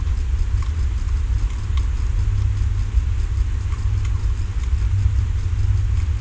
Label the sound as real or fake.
real